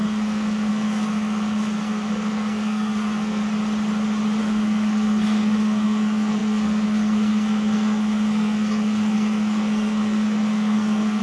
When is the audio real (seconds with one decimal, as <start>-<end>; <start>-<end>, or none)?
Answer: 3.4-4.4